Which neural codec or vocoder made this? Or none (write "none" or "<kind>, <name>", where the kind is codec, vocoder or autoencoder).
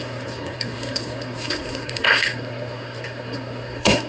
codec, SNAC